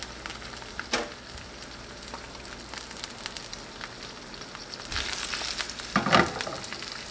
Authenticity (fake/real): real